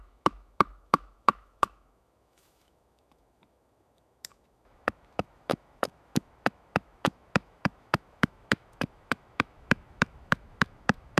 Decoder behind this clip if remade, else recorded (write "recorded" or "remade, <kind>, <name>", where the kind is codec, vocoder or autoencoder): remade, autoencoder, DAC-VAE